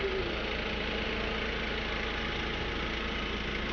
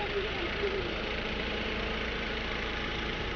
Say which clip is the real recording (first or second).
first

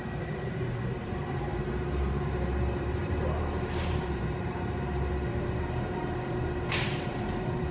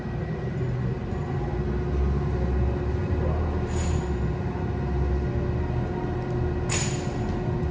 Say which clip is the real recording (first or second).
second